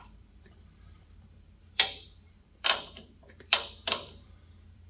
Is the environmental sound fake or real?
fake